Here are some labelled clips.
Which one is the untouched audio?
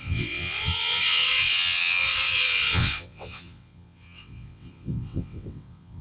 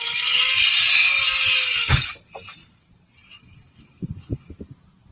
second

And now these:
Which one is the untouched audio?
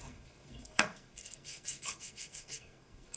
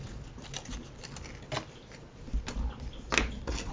second